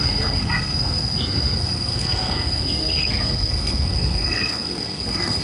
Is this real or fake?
fake